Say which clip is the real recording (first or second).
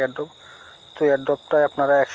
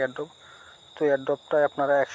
first